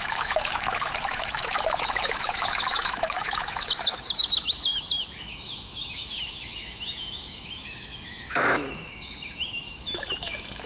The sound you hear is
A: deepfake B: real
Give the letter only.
A